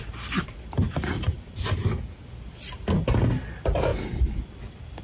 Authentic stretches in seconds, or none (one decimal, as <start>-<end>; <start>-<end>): 0.0-5.0